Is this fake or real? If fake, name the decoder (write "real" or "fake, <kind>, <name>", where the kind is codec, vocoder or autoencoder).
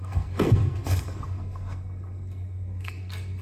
fake, codec, SNAC